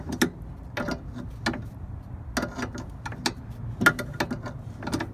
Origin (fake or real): real